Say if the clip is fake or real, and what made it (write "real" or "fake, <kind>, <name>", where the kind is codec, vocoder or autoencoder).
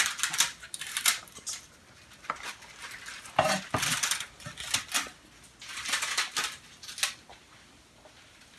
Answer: real